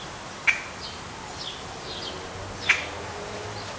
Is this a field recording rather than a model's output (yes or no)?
yes